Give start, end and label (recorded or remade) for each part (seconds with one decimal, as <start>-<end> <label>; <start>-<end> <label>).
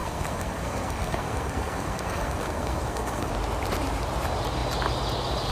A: 0.0-3.3 remade; 3.3-5.5 recorded